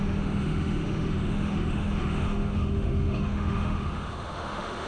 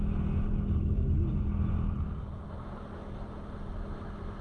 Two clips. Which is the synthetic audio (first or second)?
first